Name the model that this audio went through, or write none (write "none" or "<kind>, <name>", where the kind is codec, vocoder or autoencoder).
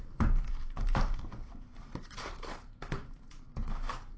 vocoder, BigVGAN v2